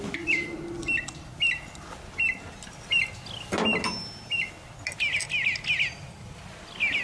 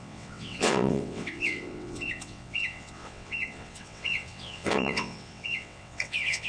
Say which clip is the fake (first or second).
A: second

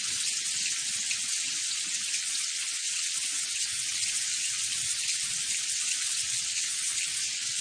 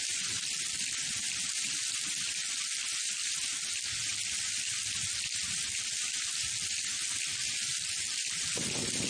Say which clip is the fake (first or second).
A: first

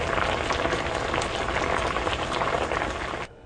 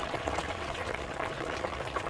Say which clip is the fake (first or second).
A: second